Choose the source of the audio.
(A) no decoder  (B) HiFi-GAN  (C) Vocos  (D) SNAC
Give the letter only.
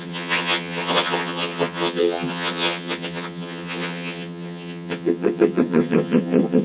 B